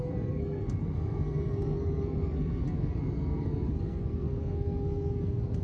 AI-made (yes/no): yes